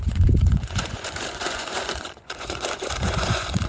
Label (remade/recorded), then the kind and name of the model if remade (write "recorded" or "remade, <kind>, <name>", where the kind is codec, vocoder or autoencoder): remade, vocoder, Vocos